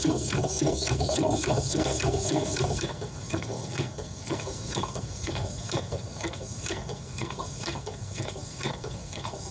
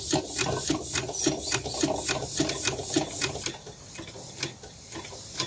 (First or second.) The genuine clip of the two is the second